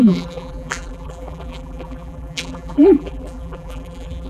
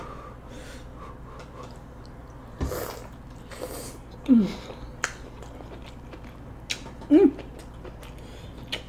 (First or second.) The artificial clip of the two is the first